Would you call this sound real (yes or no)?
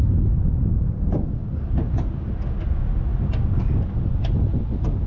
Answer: yes